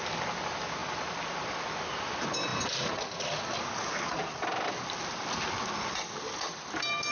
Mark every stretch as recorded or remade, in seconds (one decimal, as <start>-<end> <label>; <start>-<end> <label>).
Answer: 0.0-7.1 recorded